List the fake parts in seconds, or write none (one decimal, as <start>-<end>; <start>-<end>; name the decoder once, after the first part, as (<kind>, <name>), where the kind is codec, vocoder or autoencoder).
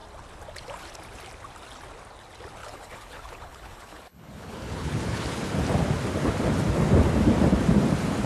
2.6-5.5 (codec, HILCodec)